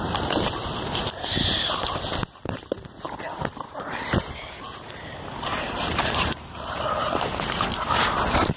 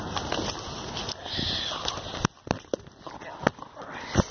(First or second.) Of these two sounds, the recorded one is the second